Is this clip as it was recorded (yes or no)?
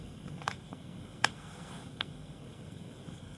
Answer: no